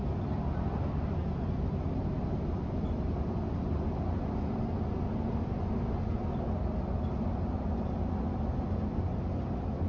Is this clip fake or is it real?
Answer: real